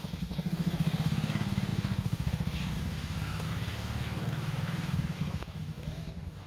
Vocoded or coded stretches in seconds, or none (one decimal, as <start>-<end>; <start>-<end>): 0.0-6.5